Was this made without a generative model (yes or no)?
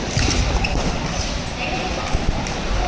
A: yes